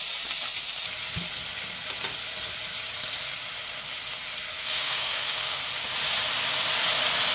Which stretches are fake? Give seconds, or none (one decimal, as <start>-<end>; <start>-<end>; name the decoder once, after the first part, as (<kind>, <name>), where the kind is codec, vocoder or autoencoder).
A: 4.5-5.6 (codec, SNAC)